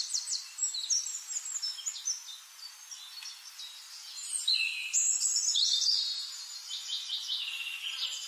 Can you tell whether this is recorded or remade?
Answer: recorded